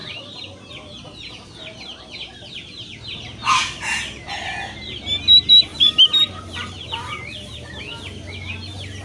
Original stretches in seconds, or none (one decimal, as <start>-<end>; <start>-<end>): 0.7-3.4; 4.3-5.7; 7.8-9.0